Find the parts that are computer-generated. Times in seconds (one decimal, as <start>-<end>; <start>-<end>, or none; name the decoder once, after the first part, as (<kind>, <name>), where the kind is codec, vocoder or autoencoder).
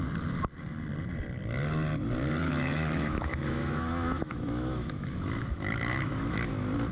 2.4-6.5 (autoencoder, DAC-VAE)